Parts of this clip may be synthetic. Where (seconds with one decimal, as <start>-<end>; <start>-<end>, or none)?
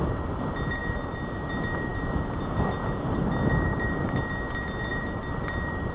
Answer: 4.9-5.5